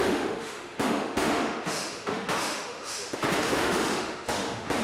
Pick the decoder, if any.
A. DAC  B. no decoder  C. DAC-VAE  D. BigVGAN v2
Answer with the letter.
C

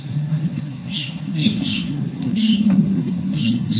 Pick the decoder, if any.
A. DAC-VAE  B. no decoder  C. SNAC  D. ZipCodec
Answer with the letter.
C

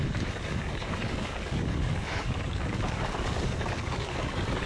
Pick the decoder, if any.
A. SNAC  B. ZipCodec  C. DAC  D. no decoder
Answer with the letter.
C